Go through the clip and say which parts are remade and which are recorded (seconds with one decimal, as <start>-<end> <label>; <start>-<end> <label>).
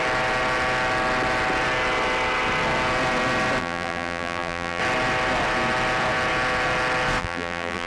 0.0-3.6 recorded; 3.6-4.8 remade; 4.8-7.2 recorded; 7.2-7.9 remade